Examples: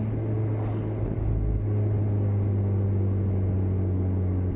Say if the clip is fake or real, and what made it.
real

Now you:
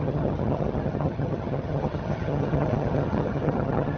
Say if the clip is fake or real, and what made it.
fake, vocoder, HiFi-GAN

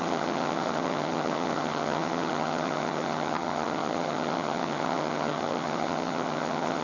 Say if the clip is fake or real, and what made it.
fake, vocoder, HiFi-GAN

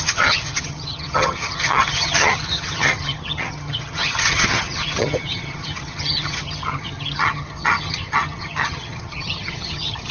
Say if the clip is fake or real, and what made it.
fake, vocoder, HiFi-GAN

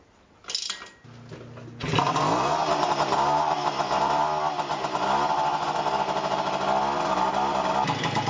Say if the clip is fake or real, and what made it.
real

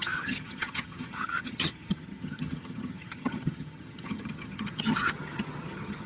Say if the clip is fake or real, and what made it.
fake, vocoder, HiFi-GAN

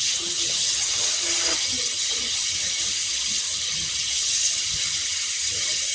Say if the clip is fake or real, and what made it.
fake, vocoder, HiFi-GAN